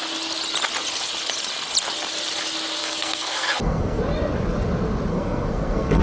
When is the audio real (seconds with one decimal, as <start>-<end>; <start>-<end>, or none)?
0.0-2.8; 4.0-5.1